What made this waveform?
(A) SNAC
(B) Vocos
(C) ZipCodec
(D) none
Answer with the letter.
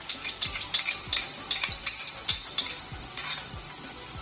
D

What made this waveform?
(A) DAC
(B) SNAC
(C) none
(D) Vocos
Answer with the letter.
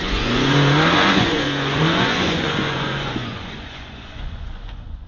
D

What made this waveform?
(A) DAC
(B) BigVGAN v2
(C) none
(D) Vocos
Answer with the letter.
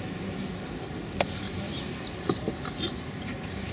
C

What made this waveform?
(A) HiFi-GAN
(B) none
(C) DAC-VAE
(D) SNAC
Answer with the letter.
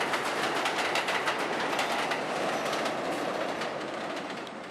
B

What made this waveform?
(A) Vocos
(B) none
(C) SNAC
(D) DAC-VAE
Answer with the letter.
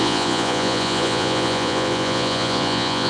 A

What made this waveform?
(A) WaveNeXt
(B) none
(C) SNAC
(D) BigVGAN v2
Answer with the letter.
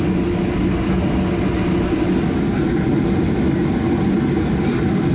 B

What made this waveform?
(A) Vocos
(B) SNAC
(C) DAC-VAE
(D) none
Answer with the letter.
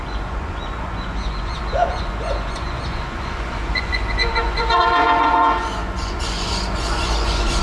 A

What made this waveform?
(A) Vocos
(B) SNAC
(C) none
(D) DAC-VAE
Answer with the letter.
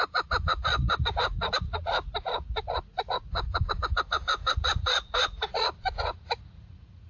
A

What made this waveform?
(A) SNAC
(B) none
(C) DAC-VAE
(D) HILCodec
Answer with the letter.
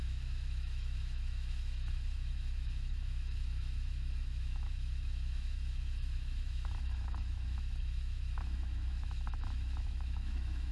C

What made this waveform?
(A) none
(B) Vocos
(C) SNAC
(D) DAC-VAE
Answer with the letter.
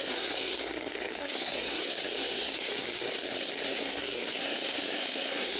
C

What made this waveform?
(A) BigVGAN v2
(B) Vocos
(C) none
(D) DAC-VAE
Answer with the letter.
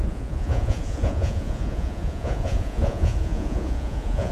B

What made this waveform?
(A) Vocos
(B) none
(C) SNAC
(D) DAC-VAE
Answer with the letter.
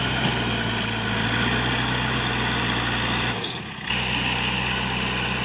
B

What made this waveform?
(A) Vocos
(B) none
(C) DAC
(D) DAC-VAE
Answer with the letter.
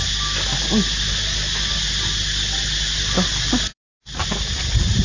B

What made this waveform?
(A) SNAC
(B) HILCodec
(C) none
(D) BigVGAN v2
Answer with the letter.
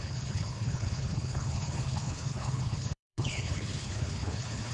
B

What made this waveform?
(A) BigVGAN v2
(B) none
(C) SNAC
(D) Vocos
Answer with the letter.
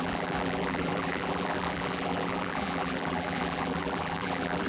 A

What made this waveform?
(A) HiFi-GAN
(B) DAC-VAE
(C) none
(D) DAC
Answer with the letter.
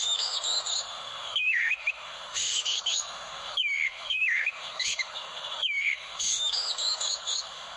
B